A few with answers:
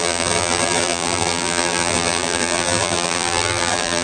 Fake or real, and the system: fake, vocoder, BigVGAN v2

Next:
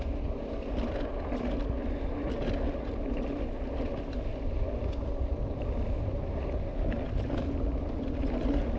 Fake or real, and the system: real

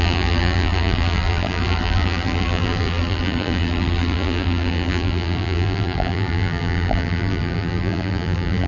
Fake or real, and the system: fake, vocoder, BigVGAN v2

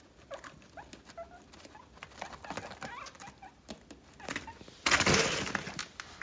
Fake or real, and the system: real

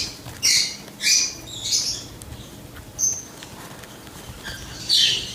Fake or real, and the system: real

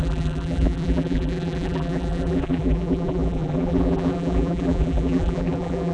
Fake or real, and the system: fake, vocoder, BigVGAN v2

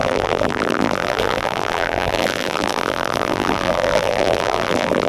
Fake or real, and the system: fake, vocoder, BigVGAN v2